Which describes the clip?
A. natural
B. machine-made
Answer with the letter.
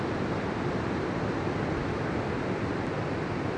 A